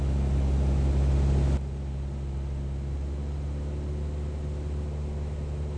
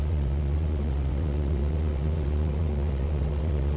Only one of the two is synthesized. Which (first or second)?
second